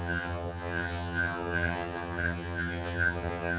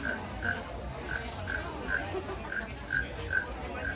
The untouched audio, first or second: second